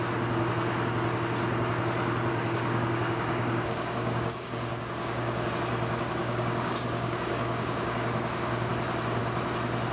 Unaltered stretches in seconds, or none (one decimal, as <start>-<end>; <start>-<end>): 0.0-2.3; 5.5-6.2; 8.7-9.9